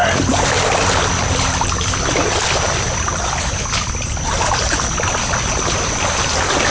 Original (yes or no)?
yes